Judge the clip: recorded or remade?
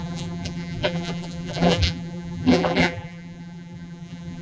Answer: remade